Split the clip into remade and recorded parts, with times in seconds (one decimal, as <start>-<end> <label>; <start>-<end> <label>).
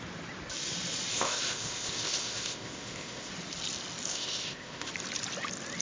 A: 0.0-1.1 recorded; 1.1-3.3 remade; 3.3-4.1 recorded; 4.1-4.9 remade; 4.9-5.8 recorded